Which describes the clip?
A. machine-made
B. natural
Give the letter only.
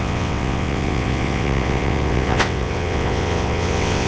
A